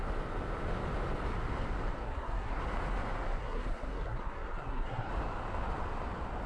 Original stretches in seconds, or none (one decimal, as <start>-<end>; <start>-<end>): 0.0-2.0; 2.6-3.4; 5.1-6.5